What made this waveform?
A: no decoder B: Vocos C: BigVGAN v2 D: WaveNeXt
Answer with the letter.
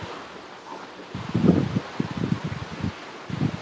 A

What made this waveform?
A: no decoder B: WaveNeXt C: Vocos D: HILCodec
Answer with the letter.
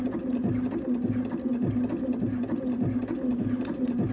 A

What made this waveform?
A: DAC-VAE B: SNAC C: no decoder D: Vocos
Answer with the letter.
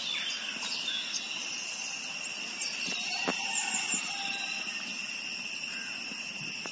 C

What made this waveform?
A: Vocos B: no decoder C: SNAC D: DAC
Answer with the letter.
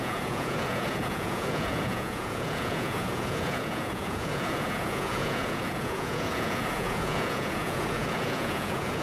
A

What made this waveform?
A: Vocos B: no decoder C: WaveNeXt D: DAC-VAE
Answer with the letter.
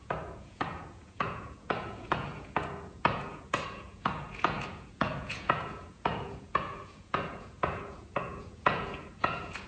A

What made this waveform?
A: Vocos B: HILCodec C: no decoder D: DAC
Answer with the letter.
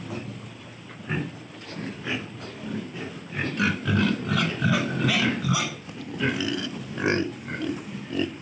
C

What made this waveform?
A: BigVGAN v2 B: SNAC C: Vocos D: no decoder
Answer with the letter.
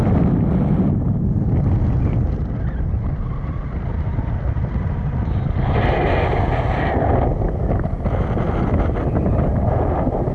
D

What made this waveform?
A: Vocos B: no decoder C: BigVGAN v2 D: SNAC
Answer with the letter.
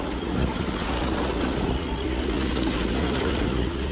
A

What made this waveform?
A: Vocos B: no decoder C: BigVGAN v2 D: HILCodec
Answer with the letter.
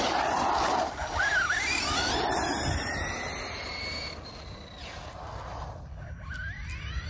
B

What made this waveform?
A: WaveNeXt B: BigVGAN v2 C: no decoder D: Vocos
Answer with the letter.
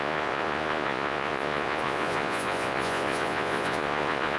D